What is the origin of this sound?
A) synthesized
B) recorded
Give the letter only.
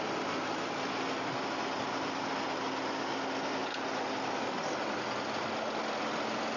B